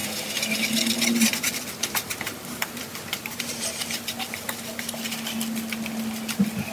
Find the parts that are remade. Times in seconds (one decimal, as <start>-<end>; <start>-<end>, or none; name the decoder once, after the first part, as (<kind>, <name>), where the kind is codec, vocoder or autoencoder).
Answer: 0.0-0.6 (vocoder, BigVGAN v2); 1.8-5.0